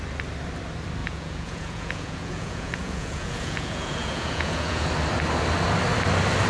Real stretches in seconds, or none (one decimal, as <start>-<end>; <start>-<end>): 0.0-1.0; 4.9-6.5